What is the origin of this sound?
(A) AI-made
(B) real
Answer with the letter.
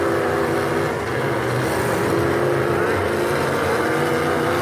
B